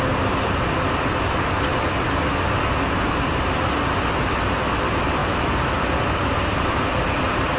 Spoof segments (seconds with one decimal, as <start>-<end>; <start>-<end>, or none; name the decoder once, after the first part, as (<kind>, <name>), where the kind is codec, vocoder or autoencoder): none